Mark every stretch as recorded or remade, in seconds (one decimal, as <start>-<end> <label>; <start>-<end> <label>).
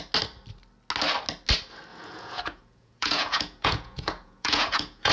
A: 0.0-1.9 recorded; 1.9-5.1 remade